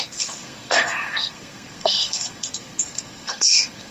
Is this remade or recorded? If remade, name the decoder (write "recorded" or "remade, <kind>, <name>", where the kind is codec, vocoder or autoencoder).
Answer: remade, codec, SNAC